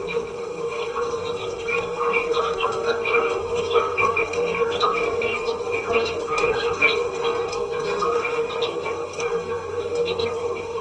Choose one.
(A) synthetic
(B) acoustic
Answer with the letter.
A